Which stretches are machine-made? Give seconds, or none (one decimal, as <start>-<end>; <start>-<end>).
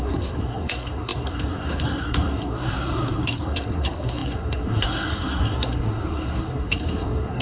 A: 0.0-7.4